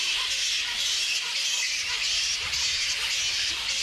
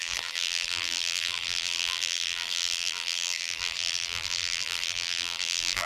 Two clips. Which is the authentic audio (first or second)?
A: first